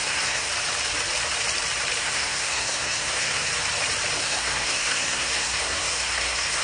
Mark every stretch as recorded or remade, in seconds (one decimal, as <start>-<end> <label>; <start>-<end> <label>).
0.0-0.5 remade; 0.5-2.0 recorded; 2.0-3.5 remade; 3.5-4.2 recorded; 4.2-6.6 remade